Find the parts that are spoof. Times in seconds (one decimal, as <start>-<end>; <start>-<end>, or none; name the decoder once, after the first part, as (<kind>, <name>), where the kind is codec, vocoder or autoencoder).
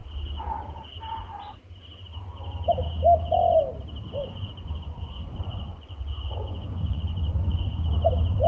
4.2-8.1 (vocoder, Vocos)